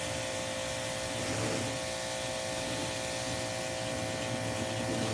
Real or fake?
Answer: real